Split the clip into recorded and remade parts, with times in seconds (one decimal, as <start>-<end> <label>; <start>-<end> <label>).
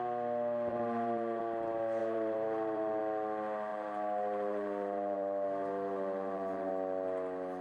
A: 0.0-0.7 recorded; 0.7-1.4 remade; 1.4-2.0 recorded; 2.0-3.0 remade; 3.0-3.7 recorded; 3.7-6.7 remade; 6.7-7.6 recorded